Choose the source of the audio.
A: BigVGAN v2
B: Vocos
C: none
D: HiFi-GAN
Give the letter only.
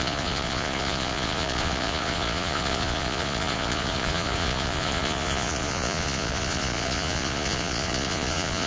B